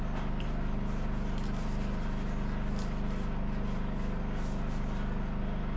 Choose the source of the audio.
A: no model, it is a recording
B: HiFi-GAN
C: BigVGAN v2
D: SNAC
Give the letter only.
A